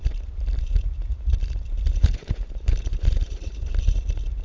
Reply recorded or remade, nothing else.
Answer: remade